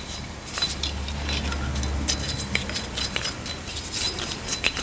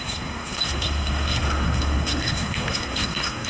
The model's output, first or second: second